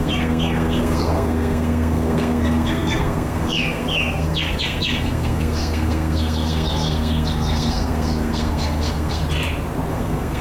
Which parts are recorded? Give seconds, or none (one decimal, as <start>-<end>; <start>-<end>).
9.2-9.9